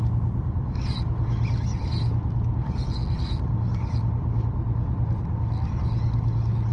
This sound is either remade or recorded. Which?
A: recorded